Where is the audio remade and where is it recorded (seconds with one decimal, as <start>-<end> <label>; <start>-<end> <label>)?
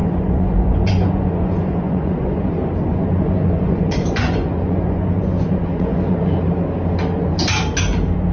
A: 0.0-2.5 remade; 2.5-2.9 recorded; 2.9-6.4 remade; 6.4-8.3 recorded